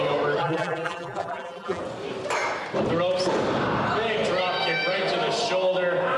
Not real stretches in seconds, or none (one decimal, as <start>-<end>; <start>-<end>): 0.4-1.8